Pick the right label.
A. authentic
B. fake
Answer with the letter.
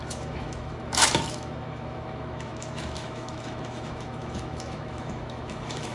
B